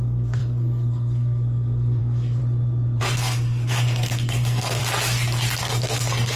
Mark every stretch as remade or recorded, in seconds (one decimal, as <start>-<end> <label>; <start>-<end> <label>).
0.0-2.4 remade; 2.4-3.0 recorded; 3.0-4.8 remade; 4.8-5.6 recorded; 5.6-6.4 remade